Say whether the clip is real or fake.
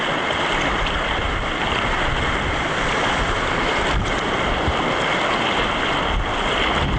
real